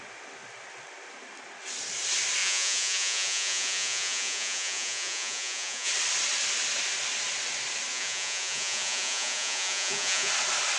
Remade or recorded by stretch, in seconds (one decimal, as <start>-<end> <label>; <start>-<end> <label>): 0.0-2.4 recorded; 2.4-5.9 remade; 5.9-7.9 recorded; 7.9-10.3 remade; 10.3-10.8 recorded